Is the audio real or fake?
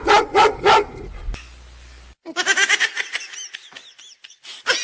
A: real